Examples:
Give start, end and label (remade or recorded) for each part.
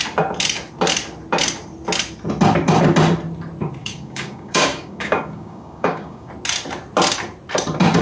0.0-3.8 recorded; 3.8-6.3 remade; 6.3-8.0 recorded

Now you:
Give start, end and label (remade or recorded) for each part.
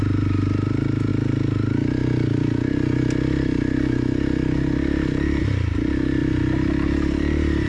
0.0-7.7 recorded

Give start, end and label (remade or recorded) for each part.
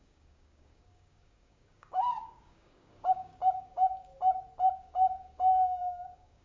0.0-4.1 remade; 4.1-4.7 recorded; 4.7-6.4 remade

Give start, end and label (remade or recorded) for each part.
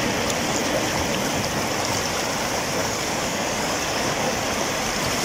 0.0-2.8 recorded; 2.8-4.4 remade; 4.4-5.2 recorded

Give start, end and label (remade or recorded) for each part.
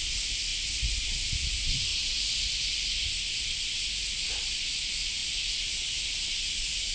0.0-6.9 recorded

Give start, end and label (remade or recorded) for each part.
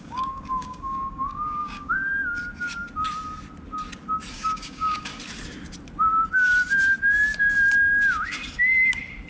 0.0-2.0 remade; 2.0-4.3 recorded; 4.3-5.1 remade; 5.1-9.3 recorded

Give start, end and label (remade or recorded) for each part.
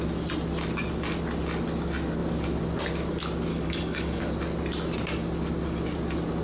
0.0-3.5 recorded; 3.5-4.2 remade; 4.2-6.4 recorded